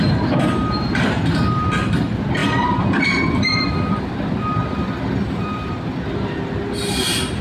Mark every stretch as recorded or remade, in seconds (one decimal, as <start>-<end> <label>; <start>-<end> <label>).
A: 0.0-2.4 recorded; 2.4-4.0 remade; 4.0-7.4 recorded